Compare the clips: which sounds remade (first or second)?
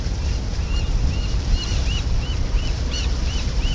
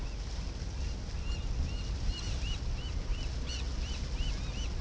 first